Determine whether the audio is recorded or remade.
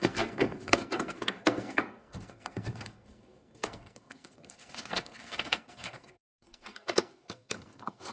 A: remade